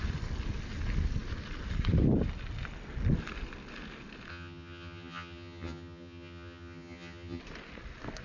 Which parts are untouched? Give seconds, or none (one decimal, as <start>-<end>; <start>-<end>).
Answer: 0.0-4.3; 7.4-8.2